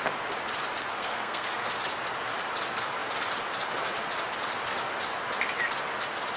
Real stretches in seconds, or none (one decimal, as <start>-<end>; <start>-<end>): 0.0-1.0; 1.7-6.4